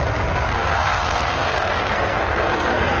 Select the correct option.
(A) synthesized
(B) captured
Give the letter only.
A